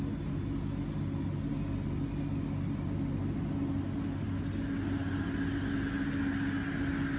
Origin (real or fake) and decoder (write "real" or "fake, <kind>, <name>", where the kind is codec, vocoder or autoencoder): real